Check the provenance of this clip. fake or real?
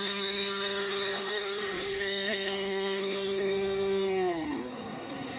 fake